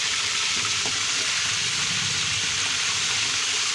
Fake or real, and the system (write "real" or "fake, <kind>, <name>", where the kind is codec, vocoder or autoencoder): fake, vocoder, BigVGAN v2